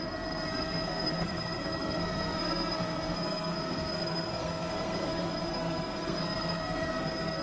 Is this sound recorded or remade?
remade